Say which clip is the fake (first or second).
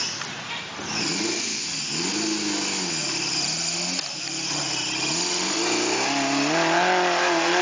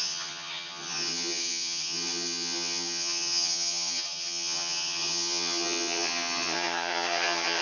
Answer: second